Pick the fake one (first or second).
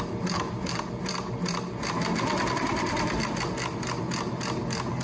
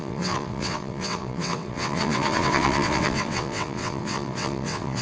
second